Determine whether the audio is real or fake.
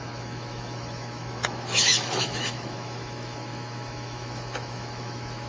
fake